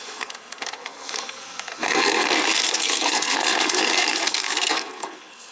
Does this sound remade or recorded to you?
remade